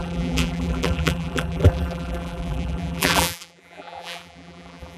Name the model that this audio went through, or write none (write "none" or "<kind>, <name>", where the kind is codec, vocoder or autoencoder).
vocoder, BigVGAN v2